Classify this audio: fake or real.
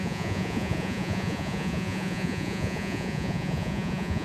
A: fake